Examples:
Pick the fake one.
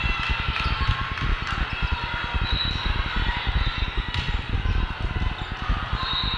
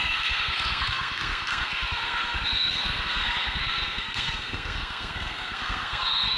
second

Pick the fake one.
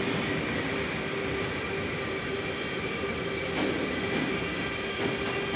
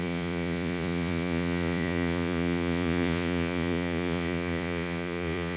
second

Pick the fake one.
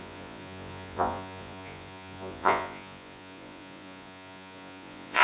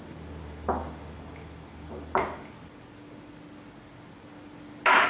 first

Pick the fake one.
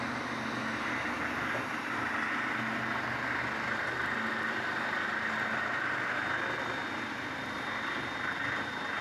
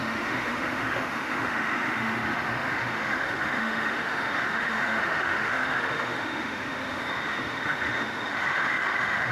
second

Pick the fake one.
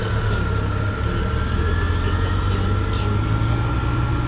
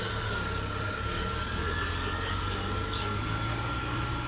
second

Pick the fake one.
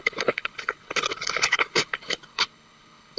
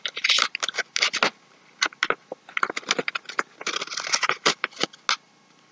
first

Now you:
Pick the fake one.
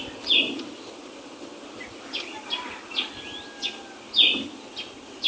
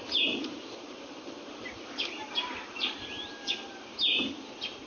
second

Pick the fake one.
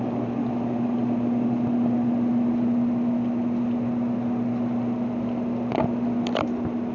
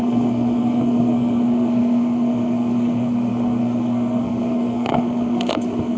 second